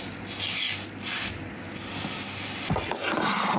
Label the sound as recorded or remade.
recorded